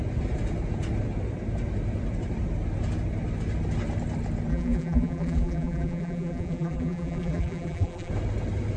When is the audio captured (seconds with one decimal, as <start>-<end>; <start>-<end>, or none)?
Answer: 0.0-4.5; 8.1-8.8